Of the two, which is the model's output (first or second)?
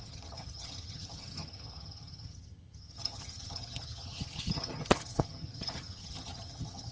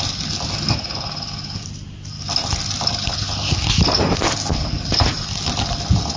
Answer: first